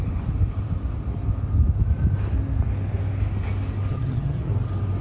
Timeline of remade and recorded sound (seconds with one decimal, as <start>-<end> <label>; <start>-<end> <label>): 0.0-3.9 recorded; 3.9-4.5 remade; 4.5-5.0 recorded